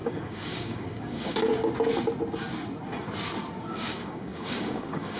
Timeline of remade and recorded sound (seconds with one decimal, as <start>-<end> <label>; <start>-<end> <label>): 0.0-1.5 remade; 1.5-3.7 recorded; 3.7-5.2 remade